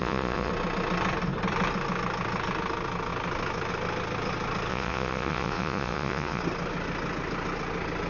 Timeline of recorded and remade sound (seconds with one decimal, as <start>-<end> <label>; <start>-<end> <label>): 0.0-0.5 remade; 0.5-4.7 recorded; 4.7-6.4 remade; 6.4-8.1 recorded

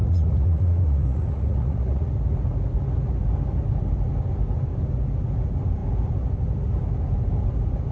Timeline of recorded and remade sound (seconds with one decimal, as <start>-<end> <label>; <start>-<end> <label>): 0.0-2.1 remade; 2.1-7.9 recorded

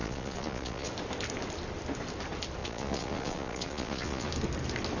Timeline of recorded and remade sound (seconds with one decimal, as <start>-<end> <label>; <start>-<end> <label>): 0.0-0.9 remade; 0.9-2.6 recorded; 2.6-4.3 remade; 4.3-5.0 recorded

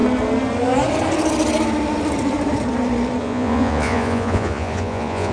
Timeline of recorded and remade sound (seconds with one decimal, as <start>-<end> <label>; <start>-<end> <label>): 0.0-3.2 recorded; 3.2-5.3 remade

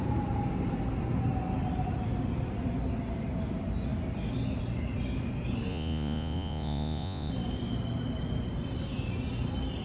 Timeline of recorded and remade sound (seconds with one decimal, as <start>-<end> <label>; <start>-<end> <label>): 0.0-5.7 recorded; 5.7-7.3 remade; 7.3-9.8 recorded

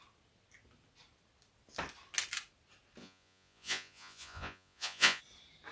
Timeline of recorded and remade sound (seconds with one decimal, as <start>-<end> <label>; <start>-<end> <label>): 0.0-3.0 recorded; 3.0-5.2 remade; 5.2-5.7 recorded

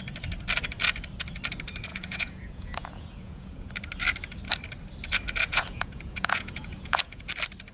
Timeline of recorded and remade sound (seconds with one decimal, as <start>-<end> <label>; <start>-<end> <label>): 0.0-1.9 recorded; 1.9-3.7 remade; 3.7-5.5 recorded; 5.5-7.3 remade; 7.3-7.7 recorded